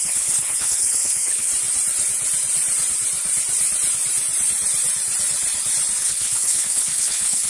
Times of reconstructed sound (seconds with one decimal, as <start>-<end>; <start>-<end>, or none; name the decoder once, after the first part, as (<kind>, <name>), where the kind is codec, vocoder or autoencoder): 0.0-1.5 (codec, HILCodec); 6.0-7.5